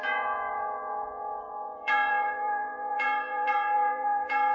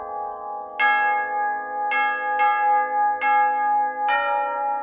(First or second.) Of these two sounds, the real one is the second